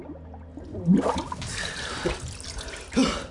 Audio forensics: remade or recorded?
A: recorded